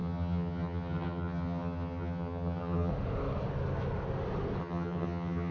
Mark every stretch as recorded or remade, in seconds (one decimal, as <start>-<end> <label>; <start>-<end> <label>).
0.0-2.9 remade; 2.9-4.6 recorded; 4.6-5.5 remade